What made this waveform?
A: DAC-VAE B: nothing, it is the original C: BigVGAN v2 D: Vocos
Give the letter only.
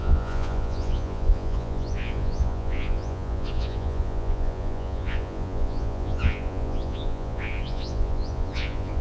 D